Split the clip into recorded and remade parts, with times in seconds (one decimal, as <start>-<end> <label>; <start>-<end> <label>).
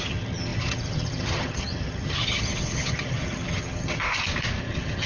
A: 0.0-4.0 remade; 4.0-4.6 recorded; 4.6-5.1 remade